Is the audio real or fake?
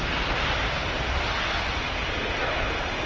real